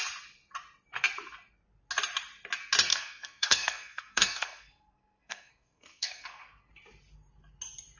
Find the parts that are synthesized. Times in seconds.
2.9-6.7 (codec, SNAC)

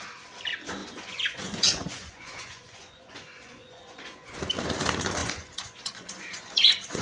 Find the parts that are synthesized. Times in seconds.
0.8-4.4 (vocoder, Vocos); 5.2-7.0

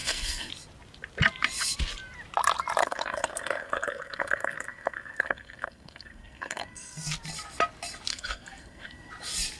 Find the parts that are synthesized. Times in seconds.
0.0-0.5 (codec, SNAC); 2.8-7.0; 8.1-9.1

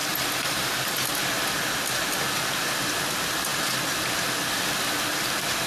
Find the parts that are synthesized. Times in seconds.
none

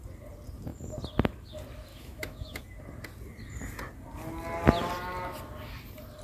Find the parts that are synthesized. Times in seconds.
1.9-2.6 (autoencoder, DAC-VAE)

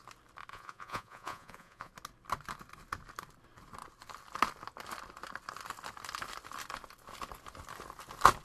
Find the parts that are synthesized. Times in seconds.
0.5-1.9 (vocoder, Vocos)